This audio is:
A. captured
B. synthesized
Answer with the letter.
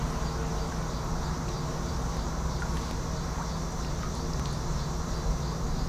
A